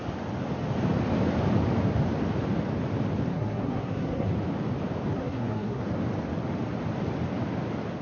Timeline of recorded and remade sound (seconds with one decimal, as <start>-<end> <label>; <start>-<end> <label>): 0.0-3.3 recorded; 3.3-4.3 remade; 4.3-5.1 recorded; 5.1-5.8 remade; 5.8-8.0 recorded